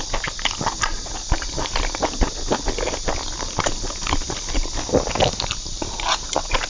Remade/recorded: recorded